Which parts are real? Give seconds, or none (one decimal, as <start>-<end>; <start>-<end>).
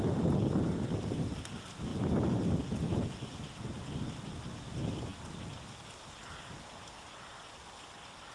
0.0-8.3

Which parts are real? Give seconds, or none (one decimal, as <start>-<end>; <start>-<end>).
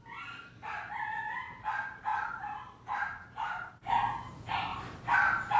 0.0-2.1; 3.7-4.7